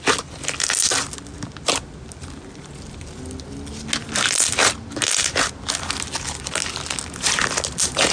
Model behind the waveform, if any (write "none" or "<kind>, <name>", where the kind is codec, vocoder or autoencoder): none